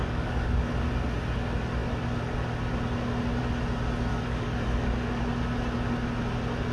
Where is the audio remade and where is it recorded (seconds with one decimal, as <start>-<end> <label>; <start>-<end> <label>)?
0.0-0.7 remade; 0.7-4.1 recorded; 4.1-5.2 remade; 5.2-6.7 recorded